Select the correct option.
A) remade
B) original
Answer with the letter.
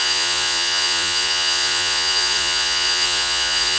A